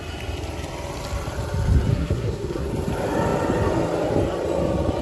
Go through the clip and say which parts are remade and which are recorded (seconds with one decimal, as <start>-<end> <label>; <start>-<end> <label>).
0.0-1.9 recorded; 1.9-2.7 remade; 2.7-5.0 recorded